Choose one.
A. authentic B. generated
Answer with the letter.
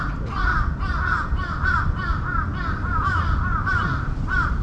B